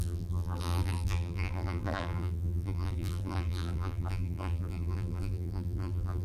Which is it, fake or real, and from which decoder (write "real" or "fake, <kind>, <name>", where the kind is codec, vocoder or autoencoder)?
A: fake, vocoder, BigVGAN v2